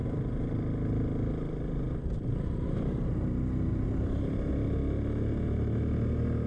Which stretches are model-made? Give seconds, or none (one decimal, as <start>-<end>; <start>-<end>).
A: 0.0-0.5; 3.7-4.5